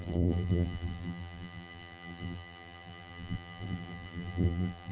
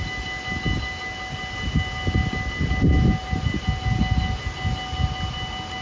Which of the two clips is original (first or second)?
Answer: second